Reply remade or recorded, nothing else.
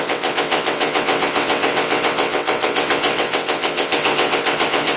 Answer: remade